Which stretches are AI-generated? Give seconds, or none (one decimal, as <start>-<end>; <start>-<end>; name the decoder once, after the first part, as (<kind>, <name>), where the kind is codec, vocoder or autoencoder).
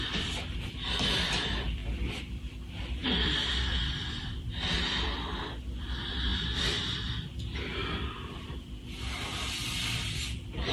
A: 0.0-1.8 (vocoder, BigVGAN v2); 2.3-10.7